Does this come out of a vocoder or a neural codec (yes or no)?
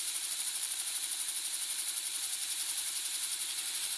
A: yes